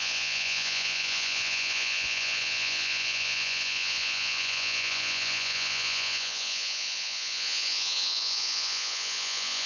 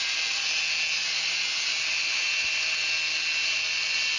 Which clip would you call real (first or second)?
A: second